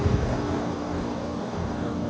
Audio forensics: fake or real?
fake